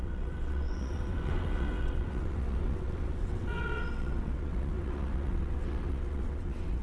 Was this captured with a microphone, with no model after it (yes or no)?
no